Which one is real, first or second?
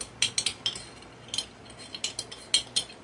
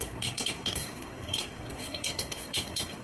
first